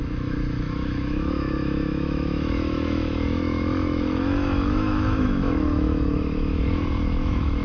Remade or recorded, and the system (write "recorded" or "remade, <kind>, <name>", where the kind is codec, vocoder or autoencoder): remade, autoencoder, DAC-VAE